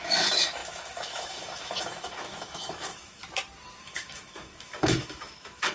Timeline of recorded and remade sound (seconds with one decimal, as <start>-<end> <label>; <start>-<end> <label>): 0.0-3.2 remade; 3.2-3.8 recorded; 3.8-5.7 remade